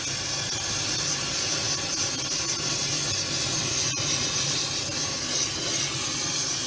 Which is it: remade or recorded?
recorded